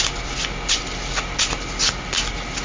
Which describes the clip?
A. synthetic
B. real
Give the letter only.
B